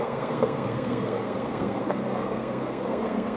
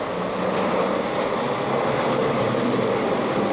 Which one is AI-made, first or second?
first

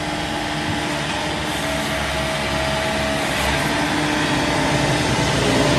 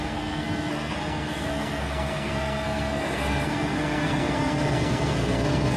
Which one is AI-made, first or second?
second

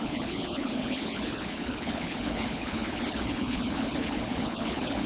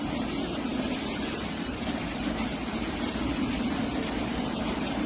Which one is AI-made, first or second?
first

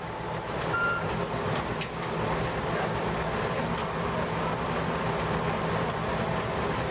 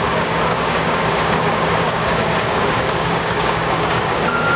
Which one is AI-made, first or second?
second